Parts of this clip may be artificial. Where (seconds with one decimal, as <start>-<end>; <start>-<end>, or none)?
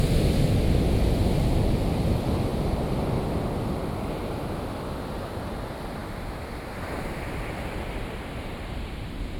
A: none